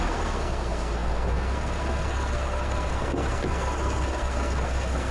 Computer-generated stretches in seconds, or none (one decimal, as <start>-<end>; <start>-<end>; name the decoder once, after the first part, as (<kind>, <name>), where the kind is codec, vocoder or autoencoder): 0.0-5.1 (codec, SNAC)